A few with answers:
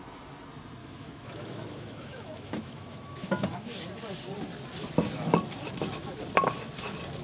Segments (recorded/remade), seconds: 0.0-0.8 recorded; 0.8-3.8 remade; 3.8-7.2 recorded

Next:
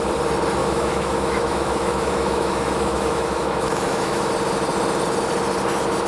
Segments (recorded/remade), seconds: 0.0-0.6 recorded; 0.6-4.3 remade; 4.3-6.1 recorded

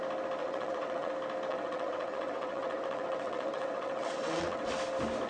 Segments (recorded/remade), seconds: 0.0-0.4 recorded; 0.4-1.1 remade; 1.1-1.5 recorded; 1.5-4.7 remade; 4.7-5.3 recorded

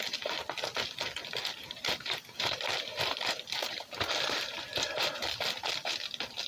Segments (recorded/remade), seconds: 0.0-1.5 recorded; 1.5-5.4 remade; 5.4-6.5 recorded

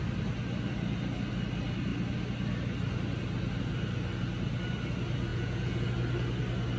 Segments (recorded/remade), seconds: 0.0-5.3 recorded; 5.3-5.9 remade; 5.9-6.8 recorded

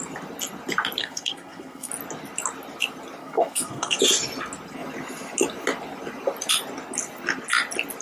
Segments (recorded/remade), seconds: 0.0-1.0 recorded; 1.0-1.9 remade; 1.9-3.2 recorded; 3.2-4.0 remade; 4.0-8.0 recorded

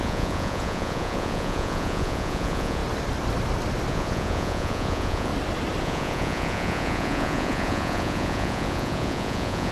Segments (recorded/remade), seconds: 0.0-2.8 remade; 2.8-3.9 recorded; 3.9-5.3 remade; 5.3-5.8 recorded; 5.8-9.7 remade